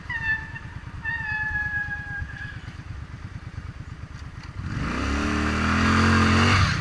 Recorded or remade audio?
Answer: recorded